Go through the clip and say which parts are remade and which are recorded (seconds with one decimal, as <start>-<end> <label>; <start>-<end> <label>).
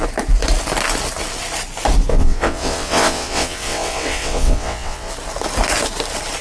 0.0-2.1 recorded; 2.1-5.1 remade; 5.1-6.4 recorded